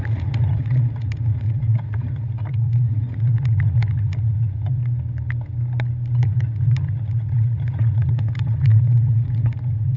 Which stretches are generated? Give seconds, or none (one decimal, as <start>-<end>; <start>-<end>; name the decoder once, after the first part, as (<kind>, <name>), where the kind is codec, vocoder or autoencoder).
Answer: 0.0-4.8 (vocoder, Vocos); 6.2-10.0